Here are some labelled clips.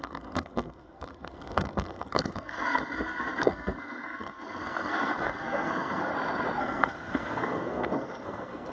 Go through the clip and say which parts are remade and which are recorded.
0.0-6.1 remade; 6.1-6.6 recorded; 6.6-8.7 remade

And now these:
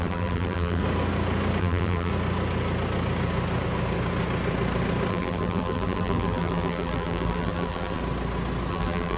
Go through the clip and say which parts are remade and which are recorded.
0.0-0.8 remade; 0.8-1.6 recorded; 1.6-2.1 remade; 2.1-5.1 recorded; 5.1-8.0 remade; 8.0-8.7 recorded; 8.7-9.2 remade

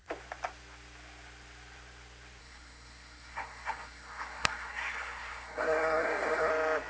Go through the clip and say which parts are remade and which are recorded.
0.0-2.4 recorded; 2.4-6.5 remade; 6.5-6.9 recorded

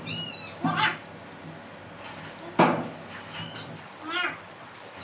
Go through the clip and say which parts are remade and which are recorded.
0.0-5.0 recorded